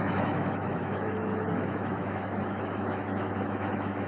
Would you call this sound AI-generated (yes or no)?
yes